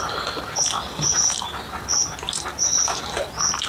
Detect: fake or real real